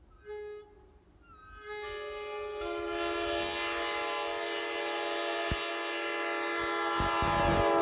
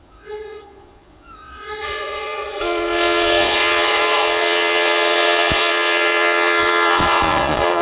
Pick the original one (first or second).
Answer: first